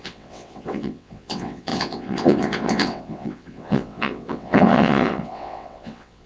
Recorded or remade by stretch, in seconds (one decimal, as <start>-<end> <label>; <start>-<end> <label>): 0.0-6.3 remade